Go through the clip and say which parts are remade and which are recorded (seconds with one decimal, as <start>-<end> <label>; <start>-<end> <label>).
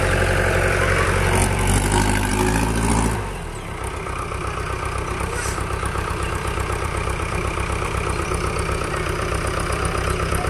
0.0-2.3 remade; 2.3-2.9 recorded; 2.9-10.5 remade